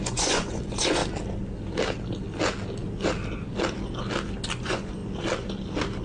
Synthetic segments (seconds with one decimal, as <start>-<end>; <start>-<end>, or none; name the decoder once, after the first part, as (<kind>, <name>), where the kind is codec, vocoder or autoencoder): 0.0-1.0 (vocoder, Vocos); 4.6-5.0